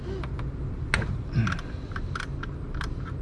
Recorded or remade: recorded